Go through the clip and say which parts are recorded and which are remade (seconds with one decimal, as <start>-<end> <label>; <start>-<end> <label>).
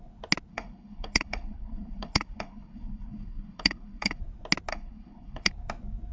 0.0-0.5 recorded; 0.5-4.2 remade; 4.2-4.7 recorded; 4.7-5.5 remade; 5.5-6.1 recorded